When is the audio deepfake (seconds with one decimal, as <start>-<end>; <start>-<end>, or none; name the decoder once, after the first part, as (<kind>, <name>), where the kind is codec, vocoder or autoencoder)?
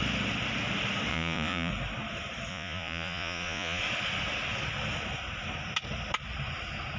1.1-1.7 (vocoder, Vocos); 2.5-3.8